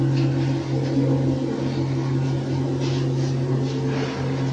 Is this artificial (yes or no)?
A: no